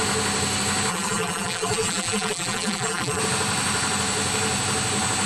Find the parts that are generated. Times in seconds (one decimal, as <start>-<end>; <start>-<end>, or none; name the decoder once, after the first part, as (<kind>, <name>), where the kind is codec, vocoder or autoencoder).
0.9-3.2 (vocoder, BigVGAN v2)